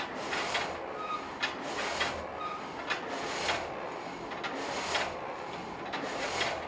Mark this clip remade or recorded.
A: recorded